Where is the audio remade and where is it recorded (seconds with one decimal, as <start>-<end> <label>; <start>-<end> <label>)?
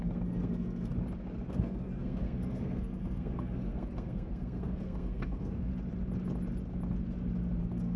0.0-0.9 remade; 0.9-1.5 recorded; 1.5-5.7 remade; 5.7-7.6 recorded; 7.6-8.0 remade